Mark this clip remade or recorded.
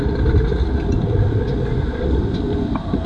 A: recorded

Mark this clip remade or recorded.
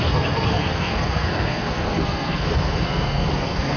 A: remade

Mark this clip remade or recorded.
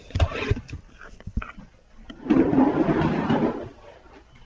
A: recorded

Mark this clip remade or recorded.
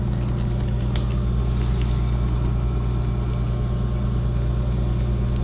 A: recorded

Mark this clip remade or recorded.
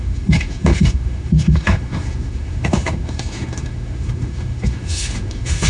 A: remade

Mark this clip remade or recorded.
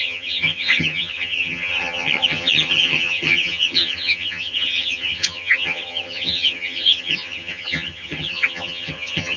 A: remade